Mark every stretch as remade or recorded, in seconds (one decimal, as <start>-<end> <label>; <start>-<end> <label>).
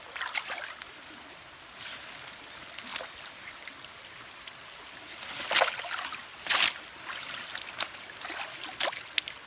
0.0-9.5 recorded